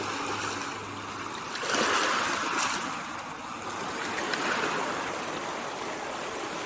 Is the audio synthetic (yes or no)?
no